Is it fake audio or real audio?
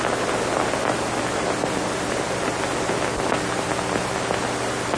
real